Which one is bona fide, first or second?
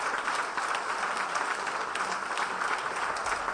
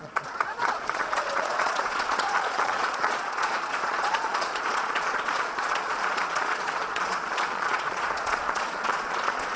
first